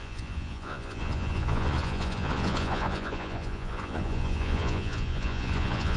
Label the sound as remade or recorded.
remade